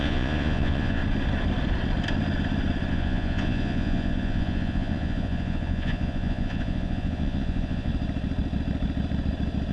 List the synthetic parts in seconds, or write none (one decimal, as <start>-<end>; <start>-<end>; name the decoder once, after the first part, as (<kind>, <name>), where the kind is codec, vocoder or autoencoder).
0.0-1.0 (vocoder, Vocos); 2.9-7.9

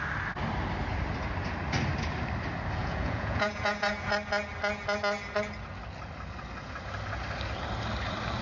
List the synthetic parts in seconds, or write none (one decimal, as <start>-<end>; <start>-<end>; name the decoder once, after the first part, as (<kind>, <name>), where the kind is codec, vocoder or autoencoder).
2.8-4.1 (vocoder, Vocos)

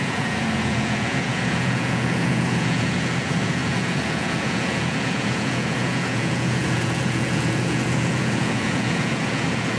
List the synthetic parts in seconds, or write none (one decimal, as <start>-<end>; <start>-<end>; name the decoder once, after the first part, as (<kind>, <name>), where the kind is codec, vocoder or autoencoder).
0.0-9.8 (vocoder, Vocos)

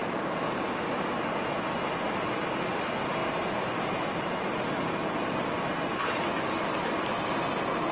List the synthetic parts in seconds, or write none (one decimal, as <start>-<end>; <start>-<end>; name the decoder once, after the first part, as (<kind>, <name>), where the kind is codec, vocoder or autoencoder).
none

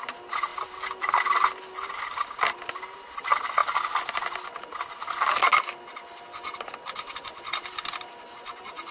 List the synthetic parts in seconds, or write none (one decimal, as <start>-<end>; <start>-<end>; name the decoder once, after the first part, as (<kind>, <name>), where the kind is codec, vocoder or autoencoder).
none

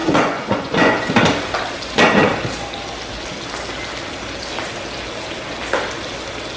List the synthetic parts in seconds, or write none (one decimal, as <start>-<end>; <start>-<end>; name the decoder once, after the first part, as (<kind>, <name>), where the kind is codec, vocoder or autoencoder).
0.0-1.1 (vocoder, Vocos)

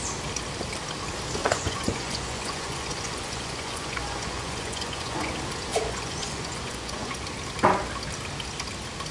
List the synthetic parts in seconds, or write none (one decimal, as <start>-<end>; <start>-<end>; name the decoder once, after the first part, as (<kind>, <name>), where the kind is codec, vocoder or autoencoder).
1.4-5.3 (vocoder, Vocos); 5.7-7.2

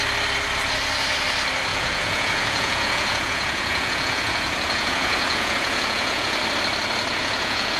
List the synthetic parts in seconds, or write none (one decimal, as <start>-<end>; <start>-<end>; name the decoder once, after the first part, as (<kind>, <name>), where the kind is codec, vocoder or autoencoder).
1.7-6.4 (vocoder, Vocos); 7.1-7.8